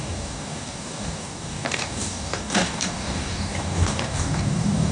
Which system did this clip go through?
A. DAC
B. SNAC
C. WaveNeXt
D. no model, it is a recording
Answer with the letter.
A